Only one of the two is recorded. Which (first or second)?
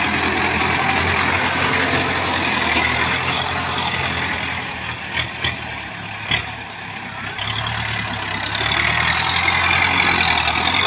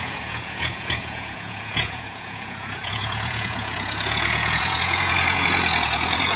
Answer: first